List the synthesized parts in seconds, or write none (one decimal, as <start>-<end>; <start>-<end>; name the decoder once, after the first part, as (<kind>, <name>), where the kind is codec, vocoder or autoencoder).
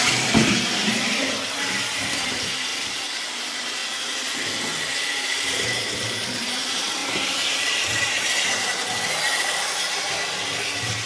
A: 0.0-2.7 (vocoder, BigVGAN v2); 3.2-3.8; 5.0-8.7